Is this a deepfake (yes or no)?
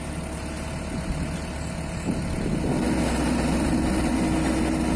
no